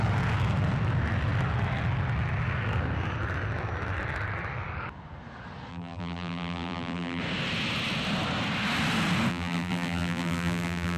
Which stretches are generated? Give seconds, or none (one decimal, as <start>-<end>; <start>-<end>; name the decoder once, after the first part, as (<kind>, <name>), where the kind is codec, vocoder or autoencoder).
5.7-7.2 (vocoder, BigVGAN v2); 9.3-11.0